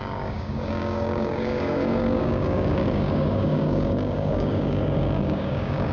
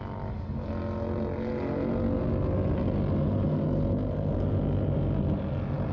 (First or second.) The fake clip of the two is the first